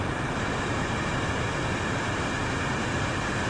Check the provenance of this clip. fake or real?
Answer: real